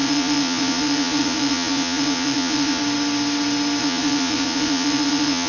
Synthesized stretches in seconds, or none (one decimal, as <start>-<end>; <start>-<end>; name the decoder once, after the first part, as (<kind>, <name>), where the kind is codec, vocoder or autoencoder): 0.0-2.8 (vocoder, Vocos); 3.8-5.5